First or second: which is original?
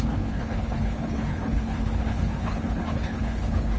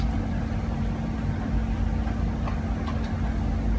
second